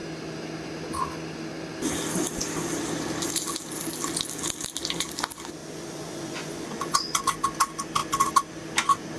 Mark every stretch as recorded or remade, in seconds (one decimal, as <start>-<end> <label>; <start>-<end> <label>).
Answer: 0.0-5.6 recorded; 5.6-7.2 remade; 7.2-9.2 recorded